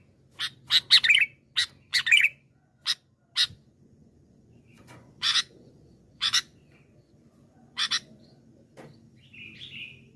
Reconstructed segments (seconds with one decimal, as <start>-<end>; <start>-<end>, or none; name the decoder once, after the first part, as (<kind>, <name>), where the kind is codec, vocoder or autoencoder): 1.9-2.9 (vocoder, Vocos); 3.4-8.4